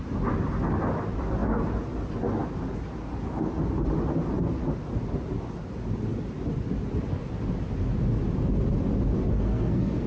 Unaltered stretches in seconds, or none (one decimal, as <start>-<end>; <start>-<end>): 0.0-9.3